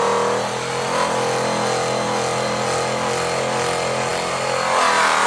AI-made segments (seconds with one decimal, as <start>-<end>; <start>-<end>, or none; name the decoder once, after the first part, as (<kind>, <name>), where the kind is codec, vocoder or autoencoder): none

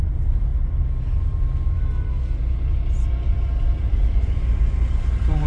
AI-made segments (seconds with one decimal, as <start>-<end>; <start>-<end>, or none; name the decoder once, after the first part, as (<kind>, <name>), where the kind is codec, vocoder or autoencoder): 0.0-0.5 (vocoder, BigVGAN v2); 3.8-5.5

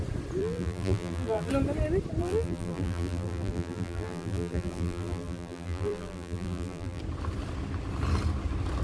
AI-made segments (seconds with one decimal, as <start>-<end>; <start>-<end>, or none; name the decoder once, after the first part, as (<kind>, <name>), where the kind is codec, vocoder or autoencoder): 0.4-1.5 (vocoder, BigVGAN v2); 2.2-7.0

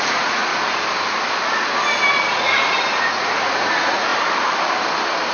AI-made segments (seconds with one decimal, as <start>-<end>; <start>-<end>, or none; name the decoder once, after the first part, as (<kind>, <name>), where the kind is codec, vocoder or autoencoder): 0.0-0.5 (vocoder, Vocos); 2.3-4.1